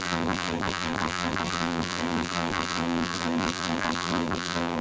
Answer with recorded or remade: remade